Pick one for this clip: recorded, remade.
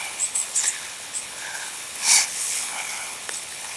remade